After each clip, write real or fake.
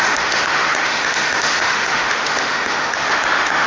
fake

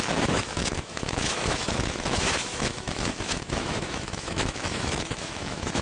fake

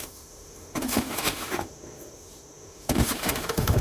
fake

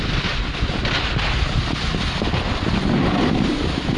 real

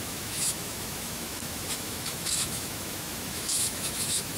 fake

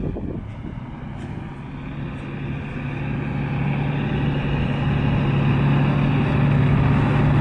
real